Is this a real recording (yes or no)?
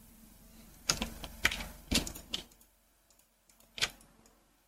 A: yes